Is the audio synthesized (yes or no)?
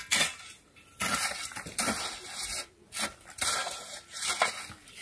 no